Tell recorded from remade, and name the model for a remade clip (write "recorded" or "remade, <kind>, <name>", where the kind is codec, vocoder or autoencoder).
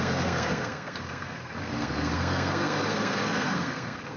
remade, codec, SNAC